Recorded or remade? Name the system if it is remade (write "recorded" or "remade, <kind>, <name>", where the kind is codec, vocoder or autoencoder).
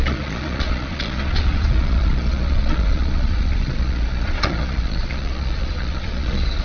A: remade, vocoder, Vocos